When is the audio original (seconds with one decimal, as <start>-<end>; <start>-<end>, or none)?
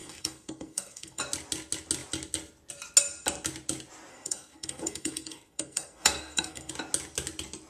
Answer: 1.2-4.1; 6.7-7.7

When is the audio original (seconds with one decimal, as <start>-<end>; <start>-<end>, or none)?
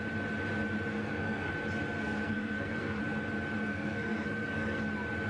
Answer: 0.0-0.9; 1.5-2.0; 3.0-3.7; 4.8-5.3